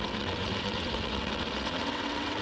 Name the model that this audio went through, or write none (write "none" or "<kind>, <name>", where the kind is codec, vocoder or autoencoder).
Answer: vocoder, WaveNeXt